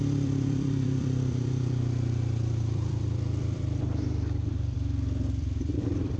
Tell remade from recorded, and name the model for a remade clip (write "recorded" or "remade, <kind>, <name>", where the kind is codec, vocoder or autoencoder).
remade, vocoder, BigVGAN v2